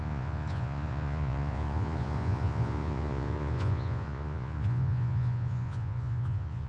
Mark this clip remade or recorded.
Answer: remade